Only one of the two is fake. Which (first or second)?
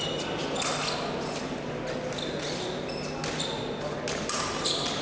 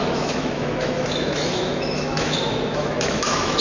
second